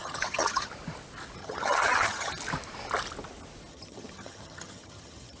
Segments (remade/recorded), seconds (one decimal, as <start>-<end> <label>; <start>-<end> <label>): 0.0-0.7 remade; 0.7-1.4 recorded; 1.4-2.3 remade; 2.3-3.7 recorded; 3.7-5.4 remade